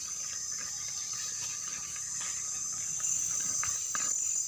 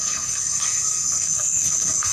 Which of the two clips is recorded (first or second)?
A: first